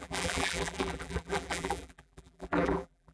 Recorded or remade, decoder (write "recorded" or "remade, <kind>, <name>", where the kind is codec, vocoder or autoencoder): remade, vocoder, BigVGAN v2